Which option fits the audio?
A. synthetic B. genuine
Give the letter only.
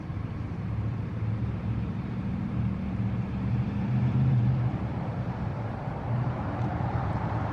A